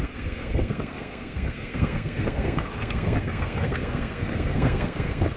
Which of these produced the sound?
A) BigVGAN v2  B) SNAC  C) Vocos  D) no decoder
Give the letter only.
B